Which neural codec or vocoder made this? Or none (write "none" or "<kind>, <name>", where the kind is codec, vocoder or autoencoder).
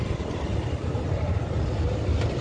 none